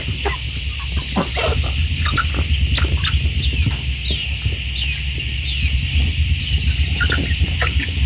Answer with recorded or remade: recorded